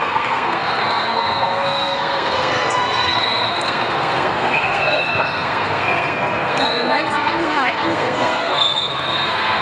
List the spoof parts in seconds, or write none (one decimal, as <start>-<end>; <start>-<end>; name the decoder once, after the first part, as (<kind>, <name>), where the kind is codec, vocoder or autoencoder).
0.0-9.6 (codec, SNAC)